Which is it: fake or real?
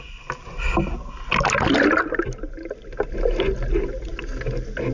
real